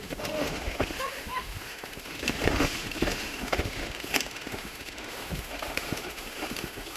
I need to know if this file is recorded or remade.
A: remade